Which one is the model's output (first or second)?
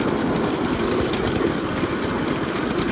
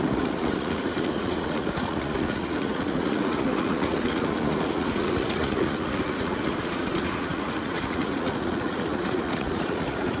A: second